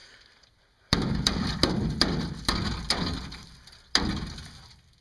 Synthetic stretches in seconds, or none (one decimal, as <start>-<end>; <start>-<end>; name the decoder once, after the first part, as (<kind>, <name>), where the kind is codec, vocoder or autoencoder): none